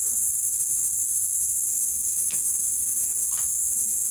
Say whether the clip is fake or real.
fake